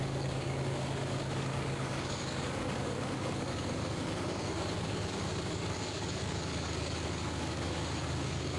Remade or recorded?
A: remade